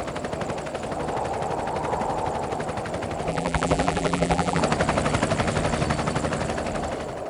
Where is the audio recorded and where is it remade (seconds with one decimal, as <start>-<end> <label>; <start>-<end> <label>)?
0.0-3.3 recorded; 3.3-4.6 remade; 4.6-7.3 recorded